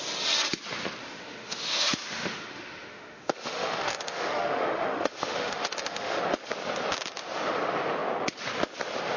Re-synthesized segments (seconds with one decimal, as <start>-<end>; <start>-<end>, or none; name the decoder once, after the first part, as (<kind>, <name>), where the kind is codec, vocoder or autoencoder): 1.0-6.2 (autoencoder, DAC-VAE)